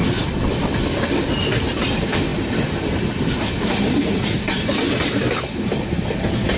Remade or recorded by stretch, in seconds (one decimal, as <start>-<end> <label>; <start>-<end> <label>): 0.0-6.6 recorded